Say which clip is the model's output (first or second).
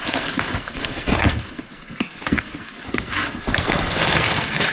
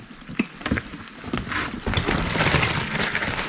first